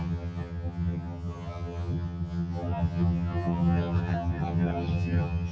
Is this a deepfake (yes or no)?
yes